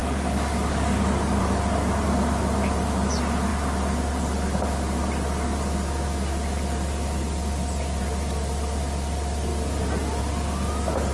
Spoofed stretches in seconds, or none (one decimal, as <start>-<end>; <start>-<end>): 0.0-1.4